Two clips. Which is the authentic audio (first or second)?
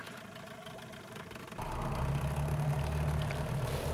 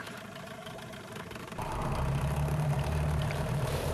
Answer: first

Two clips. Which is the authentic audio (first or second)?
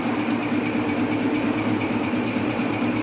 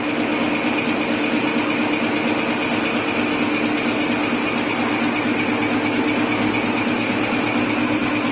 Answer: second